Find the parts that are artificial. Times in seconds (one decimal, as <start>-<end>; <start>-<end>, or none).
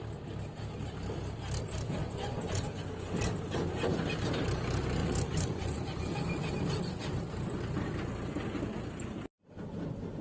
2.0-2.7; 5.0-6.5